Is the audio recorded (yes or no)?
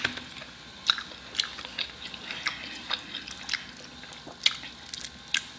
yes